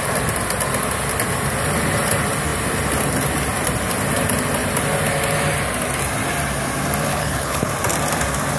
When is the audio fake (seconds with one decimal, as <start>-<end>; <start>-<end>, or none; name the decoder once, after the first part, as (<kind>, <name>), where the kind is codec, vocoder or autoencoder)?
7.1-7.7 (codec, HILCodec)